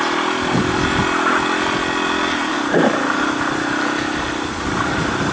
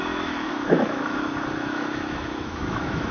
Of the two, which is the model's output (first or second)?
second